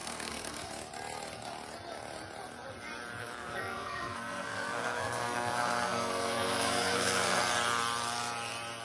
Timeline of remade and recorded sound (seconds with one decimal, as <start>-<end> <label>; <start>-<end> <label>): 0.0-0.7 remade; 0.7-3.2 recorded; 3.2-7.4 remade; 7.4-8.8 recorded